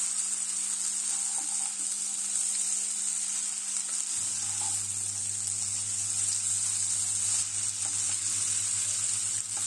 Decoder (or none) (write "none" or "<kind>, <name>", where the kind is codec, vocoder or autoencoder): none